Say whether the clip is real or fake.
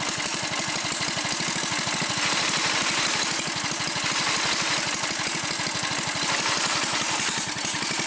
real